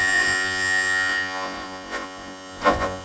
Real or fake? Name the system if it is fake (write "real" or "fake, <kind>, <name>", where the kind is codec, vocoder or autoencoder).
fake, vocoder, Vocos